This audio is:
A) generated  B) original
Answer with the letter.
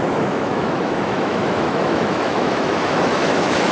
A